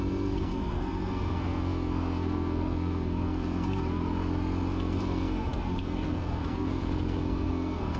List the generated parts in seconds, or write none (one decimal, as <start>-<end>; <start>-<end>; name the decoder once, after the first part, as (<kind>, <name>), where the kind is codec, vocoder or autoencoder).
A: 0.0-4.0 (codec, SNAC); 4.7-8.0